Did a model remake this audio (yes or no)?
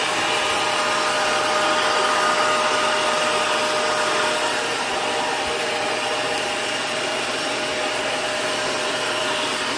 no